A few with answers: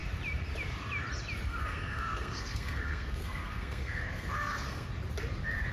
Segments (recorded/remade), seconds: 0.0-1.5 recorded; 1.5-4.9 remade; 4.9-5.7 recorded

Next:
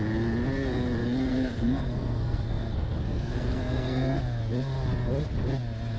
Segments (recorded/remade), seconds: 0.0-1.3 recorded; 1.3-4.2 remade; 4.2-6.0 recorded

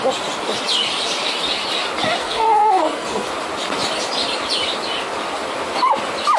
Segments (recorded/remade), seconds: 0.0-2.2 recorded; 2.2-3.3 remade; 3.3-6.4 recorded